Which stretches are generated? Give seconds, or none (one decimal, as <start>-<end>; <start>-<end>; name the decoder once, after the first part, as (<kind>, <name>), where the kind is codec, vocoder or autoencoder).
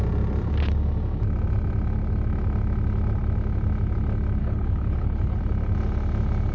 4.4-5.4 (codec, HILCodec)